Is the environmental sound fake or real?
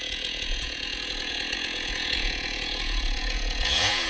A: fake